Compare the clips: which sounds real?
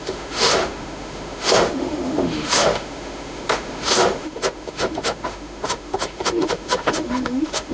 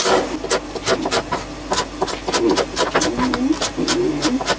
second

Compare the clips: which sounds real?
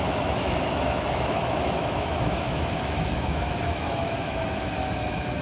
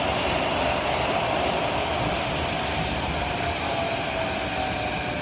second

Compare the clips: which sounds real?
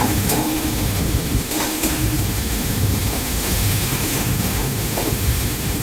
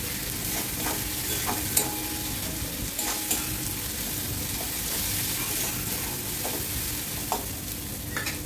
second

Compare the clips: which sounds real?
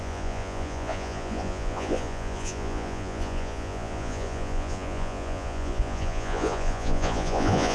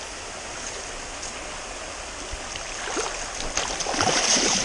second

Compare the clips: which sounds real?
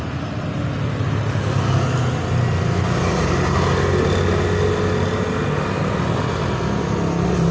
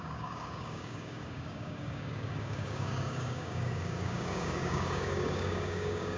first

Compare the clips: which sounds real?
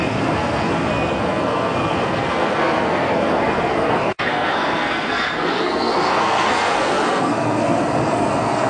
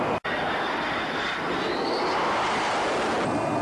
second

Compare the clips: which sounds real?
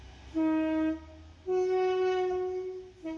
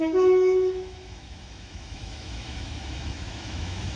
first